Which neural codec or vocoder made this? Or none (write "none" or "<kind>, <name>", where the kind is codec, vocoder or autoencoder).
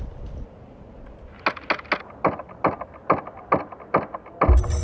none